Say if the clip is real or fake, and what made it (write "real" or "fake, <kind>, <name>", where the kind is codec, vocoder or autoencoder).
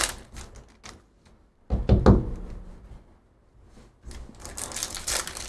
real